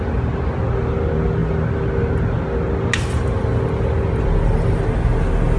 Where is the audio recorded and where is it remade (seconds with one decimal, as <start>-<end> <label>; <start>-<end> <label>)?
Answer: 0.0-5.6 recorded

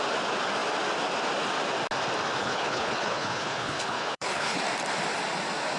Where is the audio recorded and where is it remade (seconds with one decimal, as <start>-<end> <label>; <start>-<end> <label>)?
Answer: 0.0-2.4 recorded; 2.4-4.6 remade; 4.6-5.8 recorded

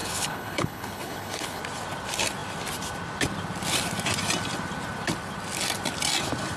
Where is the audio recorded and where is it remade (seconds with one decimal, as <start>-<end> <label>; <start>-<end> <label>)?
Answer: 0.0-1.6 remade; 1.6-6.6 recorded

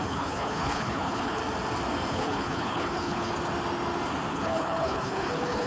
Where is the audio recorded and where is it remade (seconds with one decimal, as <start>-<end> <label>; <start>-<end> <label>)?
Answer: 0.0-1.4 remade; 1.4-2.1 recorded; 2.1-3.3 remade; 3.3-4.3 recorded; 4.3-5.7 remade